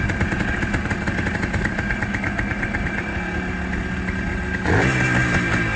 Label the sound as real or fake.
real